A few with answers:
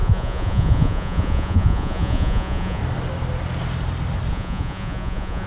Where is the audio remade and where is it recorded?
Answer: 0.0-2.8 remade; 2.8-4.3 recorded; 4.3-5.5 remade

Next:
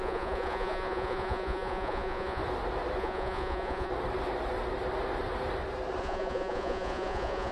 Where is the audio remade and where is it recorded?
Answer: 0.0-2.4 remade; 2.4-3.0 recorded; 3.0-3.9 remade; 3.9-6.0 recorded; 6.0-7.5 remade

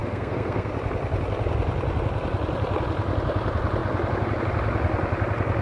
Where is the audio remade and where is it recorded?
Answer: 0.0-0.7 remade; 0.7-5.6 recorded

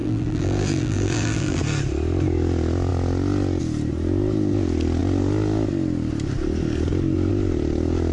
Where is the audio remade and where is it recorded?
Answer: 0.0-1.6 remade; 1.6-8.1 recorded

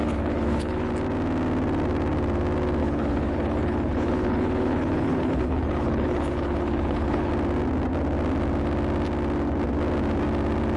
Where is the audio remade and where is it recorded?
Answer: 0.0-0.9 remade; 0.9-2.8 recorded; 2.8-7.3 remade; 7.3-10.8 recorded